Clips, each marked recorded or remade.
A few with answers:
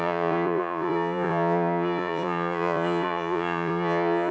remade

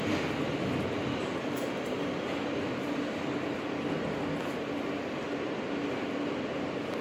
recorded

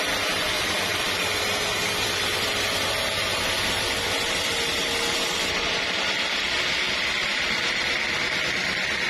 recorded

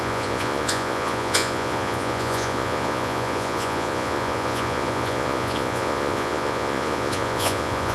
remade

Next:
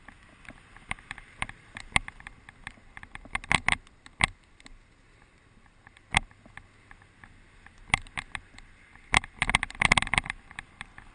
recorded